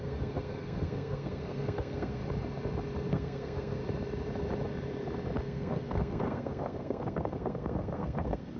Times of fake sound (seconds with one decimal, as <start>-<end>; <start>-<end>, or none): 0.0-2.2; 3.1-3.8; 5.4-8.6